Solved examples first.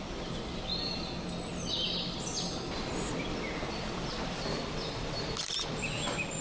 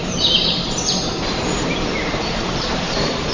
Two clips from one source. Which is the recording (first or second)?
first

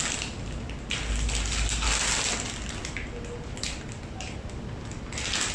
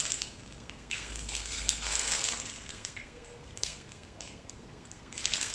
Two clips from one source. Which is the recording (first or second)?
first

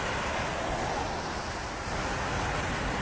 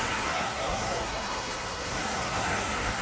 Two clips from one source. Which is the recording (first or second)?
first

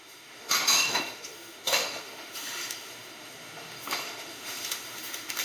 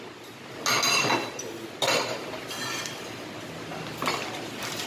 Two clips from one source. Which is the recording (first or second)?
second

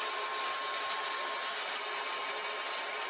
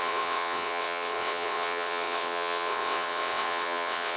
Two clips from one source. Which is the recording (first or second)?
first